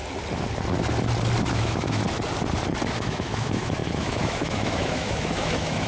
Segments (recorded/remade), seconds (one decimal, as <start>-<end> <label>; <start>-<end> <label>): 0.0-1.5 recorded; 1.5-2.0 remade; 2.0-2.9 recorded; 2.9-5.9 remade